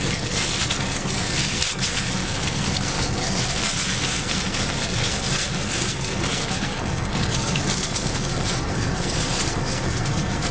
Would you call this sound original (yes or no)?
no